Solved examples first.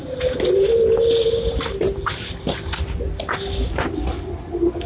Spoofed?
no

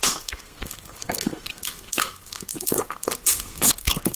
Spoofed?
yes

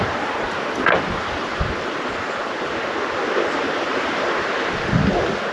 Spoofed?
no